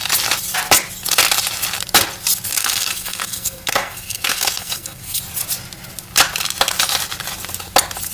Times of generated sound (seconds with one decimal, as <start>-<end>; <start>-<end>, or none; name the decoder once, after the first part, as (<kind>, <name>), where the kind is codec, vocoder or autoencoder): 2.5-5.2 (codec, SNAC)